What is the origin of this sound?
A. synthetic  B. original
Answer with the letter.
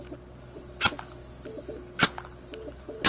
B